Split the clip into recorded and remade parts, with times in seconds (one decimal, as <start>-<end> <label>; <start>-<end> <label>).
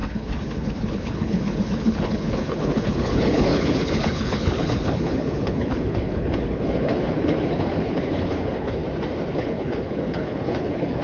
0.0-8.8 remade; 8.8-9.3 recorded; 9.3-11.0 remade